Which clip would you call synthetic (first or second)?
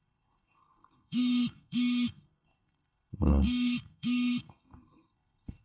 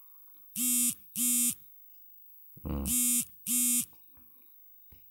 first